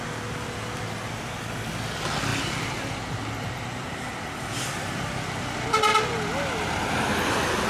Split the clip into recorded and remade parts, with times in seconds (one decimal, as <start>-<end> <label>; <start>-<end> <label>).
0.0-2.3 recorded; 2.3-4.5 remade; 4.5-7.7 recorded